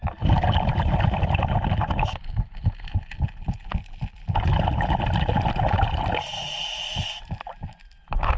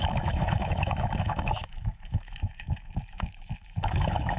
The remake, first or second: second